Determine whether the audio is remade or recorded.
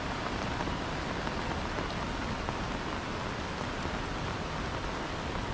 recorded